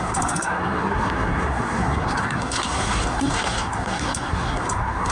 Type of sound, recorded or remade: remade